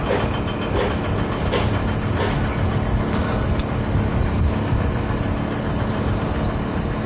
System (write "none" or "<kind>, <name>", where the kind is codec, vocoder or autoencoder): none